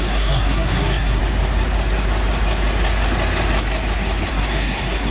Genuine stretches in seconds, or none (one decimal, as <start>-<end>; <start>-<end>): 1.2-4.3